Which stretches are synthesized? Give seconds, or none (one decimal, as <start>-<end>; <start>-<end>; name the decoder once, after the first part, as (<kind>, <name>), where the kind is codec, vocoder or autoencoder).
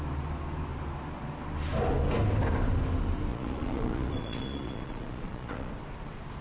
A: 3.3-5.7 (vocoder, Vocos)